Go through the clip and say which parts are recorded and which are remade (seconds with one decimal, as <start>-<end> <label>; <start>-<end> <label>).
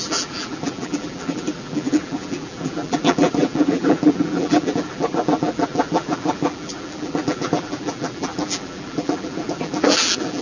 0.0-10.4 remade